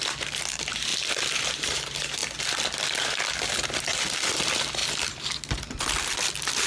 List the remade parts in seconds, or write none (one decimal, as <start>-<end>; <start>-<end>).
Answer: none